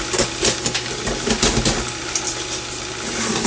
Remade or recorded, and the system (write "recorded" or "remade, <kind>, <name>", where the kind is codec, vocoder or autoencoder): recorded